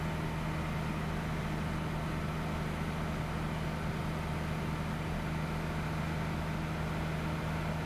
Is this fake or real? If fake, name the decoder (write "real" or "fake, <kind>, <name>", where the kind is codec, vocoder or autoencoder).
real